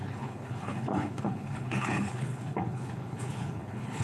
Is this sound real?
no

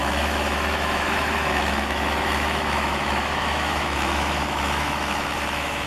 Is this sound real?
no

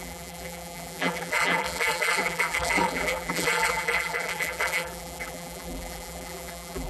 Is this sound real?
no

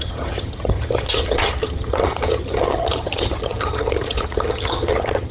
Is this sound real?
no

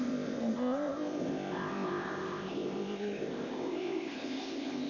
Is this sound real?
no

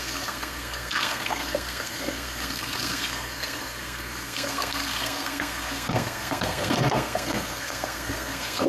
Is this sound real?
no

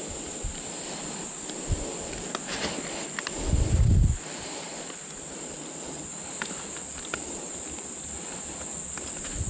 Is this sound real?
yes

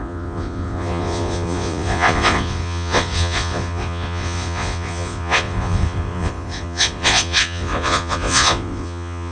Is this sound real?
no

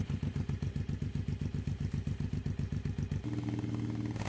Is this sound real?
yes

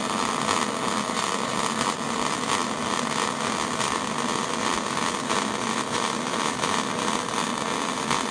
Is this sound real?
yes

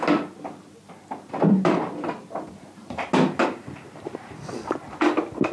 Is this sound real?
yes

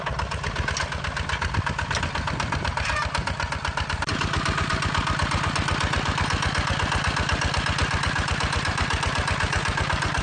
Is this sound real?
yes